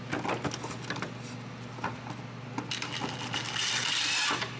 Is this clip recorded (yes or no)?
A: yes